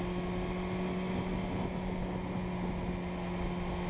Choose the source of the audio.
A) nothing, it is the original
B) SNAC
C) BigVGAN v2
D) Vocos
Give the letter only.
A